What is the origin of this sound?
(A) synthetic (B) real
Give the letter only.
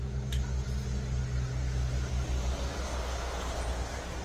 B